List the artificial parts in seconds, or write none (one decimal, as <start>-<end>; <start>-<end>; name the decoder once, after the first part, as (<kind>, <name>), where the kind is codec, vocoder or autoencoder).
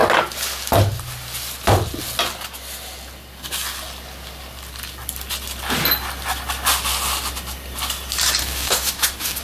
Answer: 8.4-9.4 (codec, DAC)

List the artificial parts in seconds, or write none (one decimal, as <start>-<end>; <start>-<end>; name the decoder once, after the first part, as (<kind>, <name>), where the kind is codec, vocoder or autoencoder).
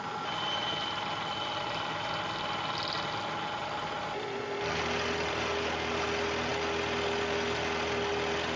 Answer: none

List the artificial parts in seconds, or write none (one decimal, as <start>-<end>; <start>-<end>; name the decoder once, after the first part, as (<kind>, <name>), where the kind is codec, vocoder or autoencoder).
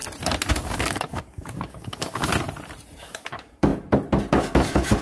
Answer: 0.5-2.3 (codec, DAC); 3.0-3.7; 4.3-5.0